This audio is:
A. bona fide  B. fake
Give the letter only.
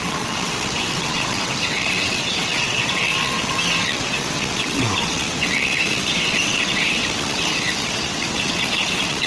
B